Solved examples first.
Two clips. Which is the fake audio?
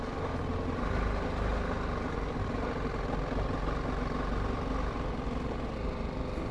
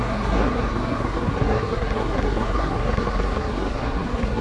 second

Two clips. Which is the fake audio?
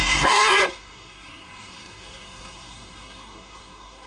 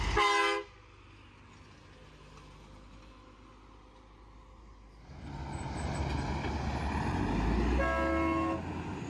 first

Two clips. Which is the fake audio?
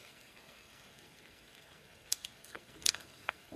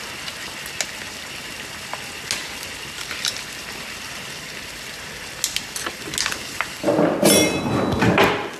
first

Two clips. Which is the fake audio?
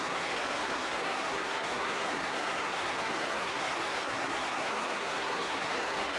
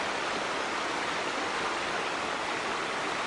first